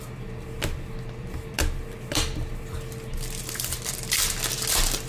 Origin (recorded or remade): recorded